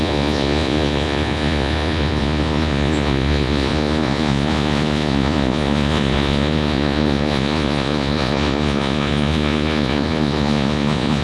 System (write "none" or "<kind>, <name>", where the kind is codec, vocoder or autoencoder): vocoder, Vocos